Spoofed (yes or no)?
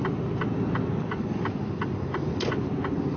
no